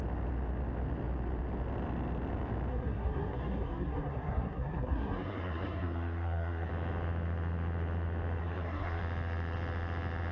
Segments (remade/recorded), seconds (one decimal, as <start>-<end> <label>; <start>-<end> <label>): 0.0-2.7 recorded; 2.7-6.7 remade; 6.7-8.4 recorded; 8.4-9.0 remade; 9.0-10.3 recorded